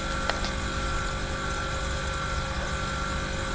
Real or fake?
real